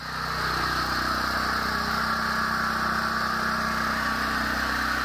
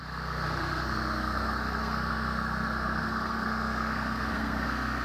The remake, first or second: second